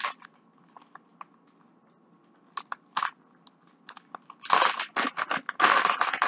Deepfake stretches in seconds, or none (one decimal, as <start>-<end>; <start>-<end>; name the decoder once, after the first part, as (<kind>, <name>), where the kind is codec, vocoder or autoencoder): none